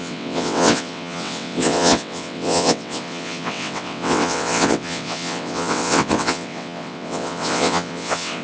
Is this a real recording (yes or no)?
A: no